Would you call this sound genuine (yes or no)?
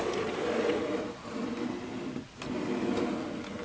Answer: yes